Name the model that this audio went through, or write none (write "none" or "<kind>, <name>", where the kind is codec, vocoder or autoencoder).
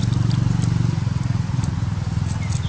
none